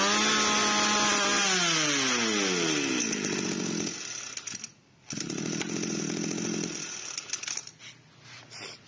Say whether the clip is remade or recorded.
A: recorded